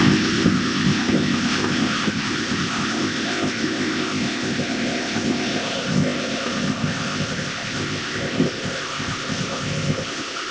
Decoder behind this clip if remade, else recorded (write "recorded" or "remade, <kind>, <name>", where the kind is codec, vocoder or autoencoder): remade, codec, ZipCodec